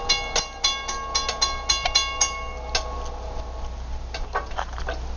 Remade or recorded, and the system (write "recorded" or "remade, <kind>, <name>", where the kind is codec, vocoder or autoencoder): recorded